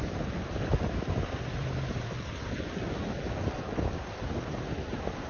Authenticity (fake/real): real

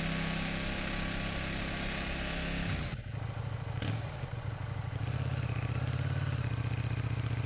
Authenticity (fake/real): real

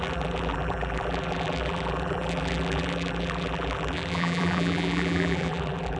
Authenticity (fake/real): fake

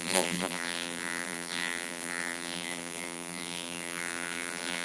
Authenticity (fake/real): fake